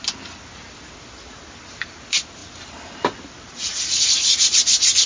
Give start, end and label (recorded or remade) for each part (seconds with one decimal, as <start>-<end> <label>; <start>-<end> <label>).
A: 0.0-5.1 recorded